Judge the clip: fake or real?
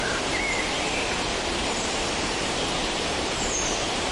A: fake